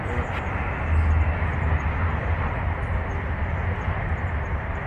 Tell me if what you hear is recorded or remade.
recorded